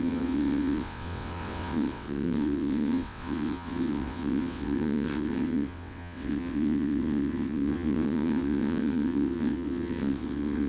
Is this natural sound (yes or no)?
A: no